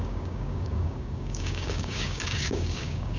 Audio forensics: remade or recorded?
remade